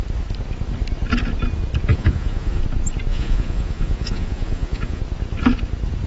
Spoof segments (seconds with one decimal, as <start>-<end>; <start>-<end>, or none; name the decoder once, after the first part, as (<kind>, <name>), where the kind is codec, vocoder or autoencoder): 1.9-2.6 (vocoder, Vocos); 3.1-5.0

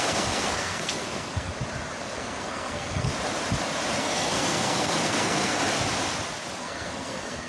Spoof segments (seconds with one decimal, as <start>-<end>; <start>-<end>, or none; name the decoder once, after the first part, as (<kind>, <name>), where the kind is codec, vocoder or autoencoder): 0.0-1.5 (codec, SNAC); 2.0-3.1; 4.0-5.6; 6.6-7.5

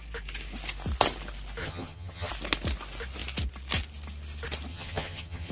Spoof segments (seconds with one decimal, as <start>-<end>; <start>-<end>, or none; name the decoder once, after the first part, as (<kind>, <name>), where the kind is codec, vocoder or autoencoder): 1.6-2.3 (vocoder, HiFi-GAN); 4.7-5.5

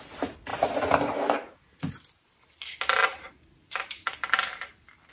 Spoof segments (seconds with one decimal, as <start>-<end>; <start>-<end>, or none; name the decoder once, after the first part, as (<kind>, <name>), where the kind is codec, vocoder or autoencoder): none

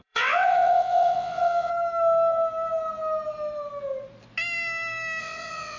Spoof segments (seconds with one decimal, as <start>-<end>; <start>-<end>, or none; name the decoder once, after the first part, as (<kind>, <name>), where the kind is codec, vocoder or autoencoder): 0.0-1.7 (vocoder, WaveNeXt); 5.2-5.8

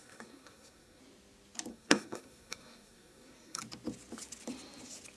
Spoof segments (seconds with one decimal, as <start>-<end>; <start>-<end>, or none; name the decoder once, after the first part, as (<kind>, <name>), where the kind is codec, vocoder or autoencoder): 0.0-1.0 (codec, SNAC); 1.7-3.6

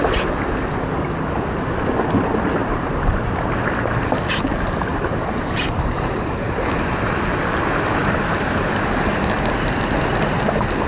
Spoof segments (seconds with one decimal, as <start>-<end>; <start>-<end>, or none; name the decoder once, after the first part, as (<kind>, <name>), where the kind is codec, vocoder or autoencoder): 2.6-3.4 (vocoder, BigVGAN v2); 4.9-6.7; 8.0-9.1